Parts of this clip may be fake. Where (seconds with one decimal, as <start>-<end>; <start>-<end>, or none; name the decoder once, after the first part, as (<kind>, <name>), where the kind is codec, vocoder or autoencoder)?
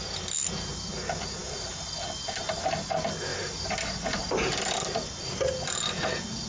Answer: 3.3-3.8 (vocoder, BigVGAN v2)